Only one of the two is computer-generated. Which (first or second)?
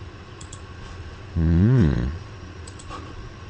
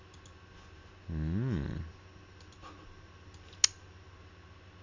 first